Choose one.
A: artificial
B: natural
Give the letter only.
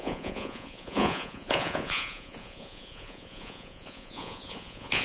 A